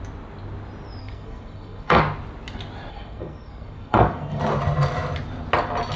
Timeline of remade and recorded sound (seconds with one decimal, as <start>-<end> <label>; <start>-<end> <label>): 0.0-1.0 recorded; 1.0-2.0 remade; 2.0-2.9 recorded; 2.9-4.4 remade; 4.4-6.0 recorded